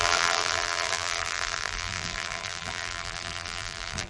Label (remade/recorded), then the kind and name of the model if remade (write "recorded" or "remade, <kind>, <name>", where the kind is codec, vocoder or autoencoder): remade, vocoder, BigVGAN v2